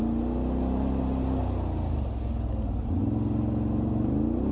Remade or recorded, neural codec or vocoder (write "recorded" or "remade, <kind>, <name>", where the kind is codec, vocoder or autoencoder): recorded